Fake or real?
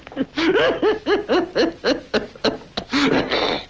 real